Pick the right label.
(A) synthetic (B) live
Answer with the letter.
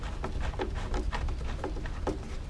B